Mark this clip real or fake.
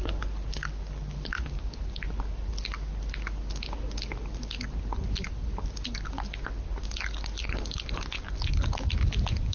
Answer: real